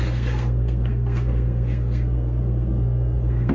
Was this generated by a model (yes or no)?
yes